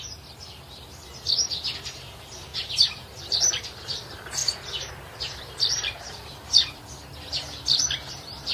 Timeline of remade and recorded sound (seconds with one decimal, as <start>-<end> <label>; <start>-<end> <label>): 0.0-2.5 remade; 2.5-3.2 recorded; 3.2-8.5 remade